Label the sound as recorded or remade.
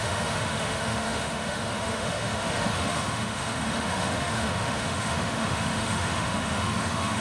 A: remade